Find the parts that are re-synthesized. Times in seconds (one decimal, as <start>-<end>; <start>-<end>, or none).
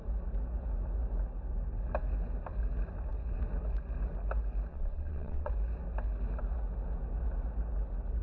4.7-5.5